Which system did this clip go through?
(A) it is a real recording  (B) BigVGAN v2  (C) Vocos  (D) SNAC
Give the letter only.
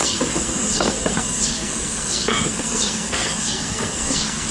D